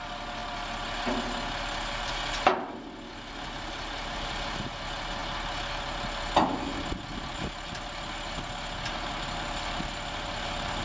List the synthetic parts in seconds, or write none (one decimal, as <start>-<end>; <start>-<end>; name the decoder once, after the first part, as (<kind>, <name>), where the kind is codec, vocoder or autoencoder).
none